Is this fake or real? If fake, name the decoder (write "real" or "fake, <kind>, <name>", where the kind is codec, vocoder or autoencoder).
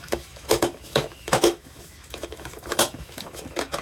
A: fake, autoencoder, DAC-VAE